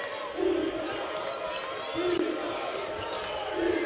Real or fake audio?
real